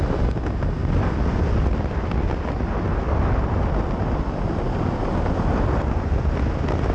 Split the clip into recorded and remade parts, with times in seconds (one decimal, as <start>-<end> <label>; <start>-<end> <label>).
0.0-6.9 recorded